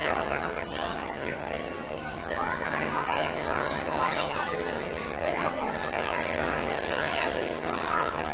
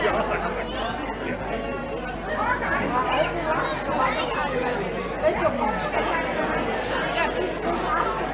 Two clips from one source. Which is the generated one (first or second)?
first